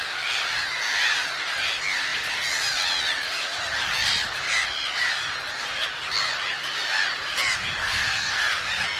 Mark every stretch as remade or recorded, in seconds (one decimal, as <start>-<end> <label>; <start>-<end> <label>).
0.0-7.8 recorded; 7.8-8.4 remade; 8.4-9.0 recorded